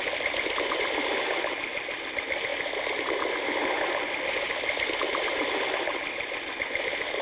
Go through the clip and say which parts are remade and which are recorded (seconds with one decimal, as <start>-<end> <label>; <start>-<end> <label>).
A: 0.0-7.2 recorded